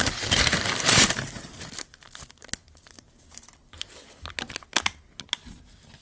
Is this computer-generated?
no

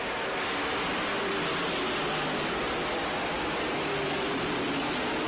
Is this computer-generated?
no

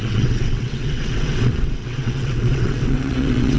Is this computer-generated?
yes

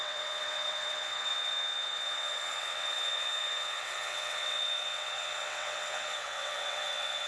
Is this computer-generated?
yes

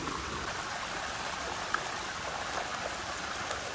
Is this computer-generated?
no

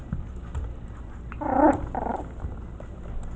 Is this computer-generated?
no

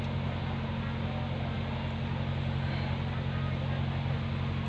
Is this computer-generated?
no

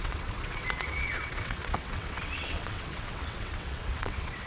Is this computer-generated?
yes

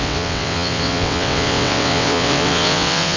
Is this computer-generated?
yes